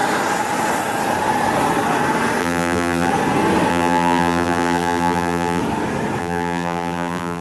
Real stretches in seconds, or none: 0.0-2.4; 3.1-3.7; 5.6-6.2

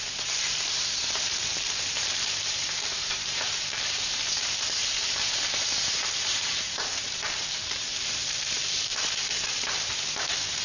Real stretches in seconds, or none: 8.9-9.5

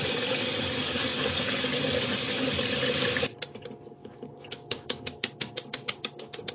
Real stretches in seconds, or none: 0.0-4.0